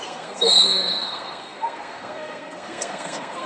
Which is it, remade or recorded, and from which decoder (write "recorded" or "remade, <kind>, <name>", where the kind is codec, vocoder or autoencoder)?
remade, codec, SNAC